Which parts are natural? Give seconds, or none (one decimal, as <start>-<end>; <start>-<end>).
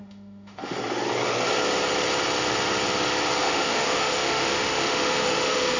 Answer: 0.8-3.4